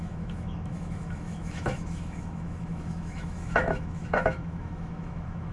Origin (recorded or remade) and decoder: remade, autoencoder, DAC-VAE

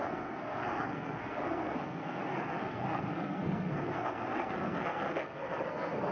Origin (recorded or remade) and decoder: remade, codec, SNAC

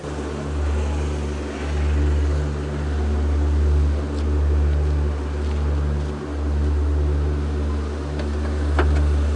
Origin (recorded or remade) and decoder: recorded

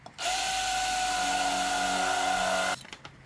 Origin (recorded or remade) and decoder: recorded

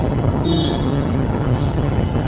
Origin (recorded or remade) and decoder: remade, vocoder, HiFi-GAN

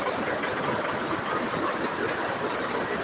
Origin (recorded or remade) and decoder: recorded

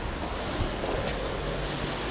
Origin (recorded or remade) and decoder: recorded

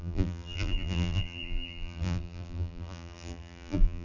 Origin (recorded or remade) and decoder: remade, vocoder, BigVGAN v2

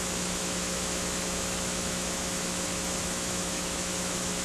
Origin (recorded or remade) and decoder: remade, autoencoder, DAC-VAE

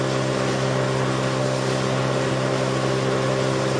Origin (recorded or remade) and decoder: recorded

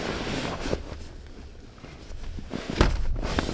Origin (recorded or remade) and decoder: recorded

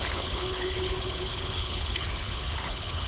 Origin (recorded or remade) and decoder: remade, codec, HILCodec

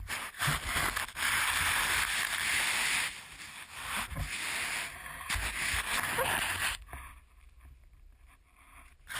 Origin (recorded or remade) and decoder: recorded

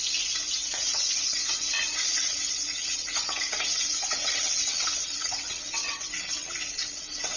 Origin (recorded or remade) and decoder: remade, vocoder, WaveNeXt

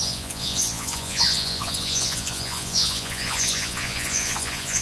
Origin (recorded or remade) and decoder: remade, vocoder, Vocos